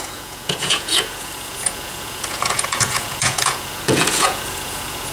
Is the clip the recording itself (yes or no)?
no